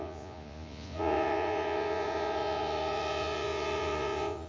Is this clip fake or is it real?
fake